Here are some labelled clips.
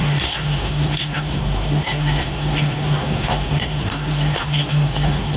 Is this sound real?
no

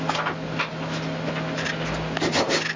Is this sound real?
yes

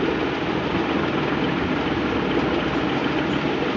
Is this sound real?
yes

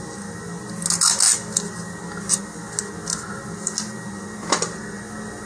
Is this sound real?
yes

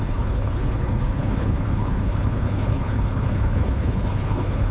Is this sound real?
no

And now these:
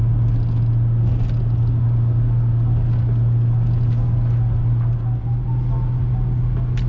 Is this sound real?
yes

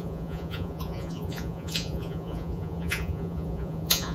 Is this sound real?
no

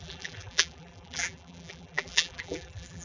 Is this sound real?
no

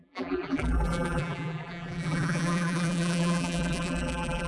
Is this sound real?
no